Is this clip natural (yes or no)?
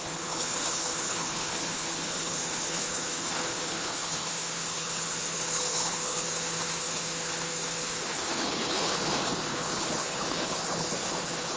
no